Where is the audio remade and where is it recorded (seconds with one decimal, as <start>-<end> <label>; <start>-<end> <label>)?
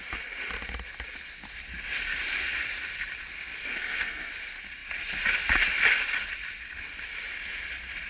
0.0-3.7 recorded; 3.7-4.3 remade; 4.3-8.1 recorded